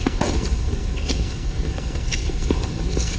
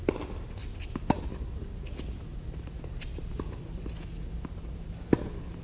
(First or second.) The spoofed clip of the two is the first